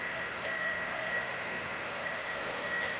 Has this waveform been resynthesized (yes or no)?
yes